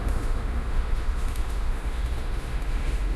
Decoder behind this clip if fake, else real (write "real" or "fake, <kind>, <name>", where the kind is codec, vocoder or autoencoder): fake, autoencoder, DAC-VAE